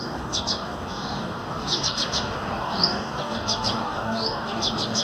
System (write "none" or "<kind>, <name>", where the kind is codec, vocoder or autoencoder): codec, DAC